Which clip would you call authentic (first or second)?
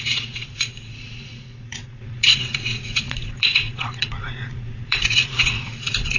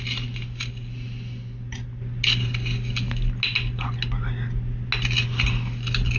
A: second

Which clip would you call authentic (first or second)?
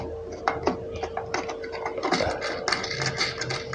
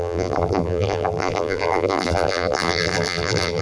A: first